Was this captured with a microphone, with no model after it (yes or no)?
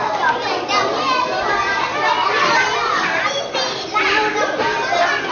yes